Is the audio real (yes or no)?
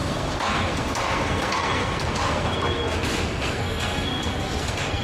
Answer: no